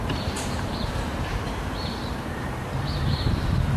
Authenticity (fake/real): fake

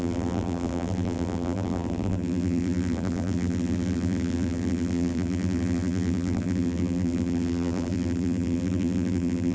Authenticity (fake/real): fake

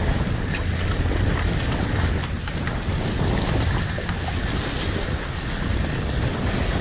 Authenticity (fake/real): real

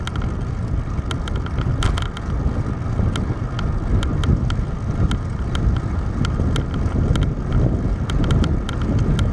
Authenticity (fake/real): real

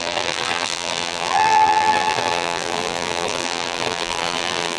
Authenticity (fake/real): fake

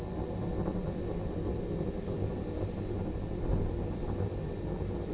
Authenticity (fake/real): real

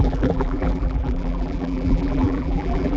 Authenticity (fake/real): fake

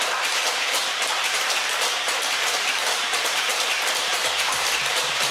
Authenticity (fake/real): fake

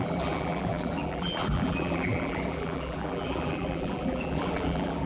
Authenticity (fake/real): fake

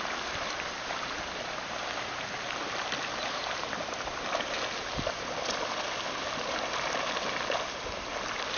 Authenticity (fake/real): fake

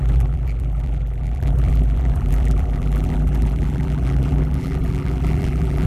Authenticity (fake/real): fake